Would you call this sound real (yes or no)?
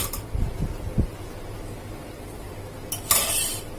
yes